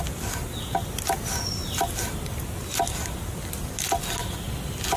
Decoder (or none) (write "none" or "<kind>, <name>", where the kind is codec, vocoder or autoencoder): none